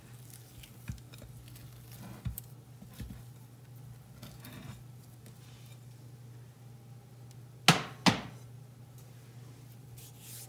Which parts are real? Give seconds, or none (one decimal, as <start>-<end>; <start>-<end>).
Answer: 0.0-10.5